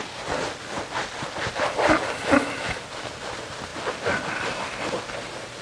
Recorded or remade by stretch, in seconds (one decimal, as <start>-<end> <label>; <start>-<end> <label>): 0.0-5.6 recorded